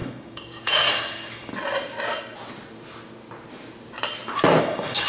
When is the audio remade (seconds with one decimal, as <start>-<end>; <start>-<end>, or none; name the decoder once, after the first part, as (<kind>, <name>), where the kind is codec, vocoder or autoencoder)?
0.0-1.5 (codec, DAC); 4.6-5.1